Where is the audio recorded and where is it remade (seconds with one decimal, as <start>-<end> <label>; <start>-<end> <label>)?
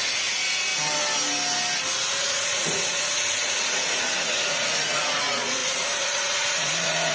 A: 0.0-0.7 remade; 0.7-2.2 recorded; 2.2-7.1 remade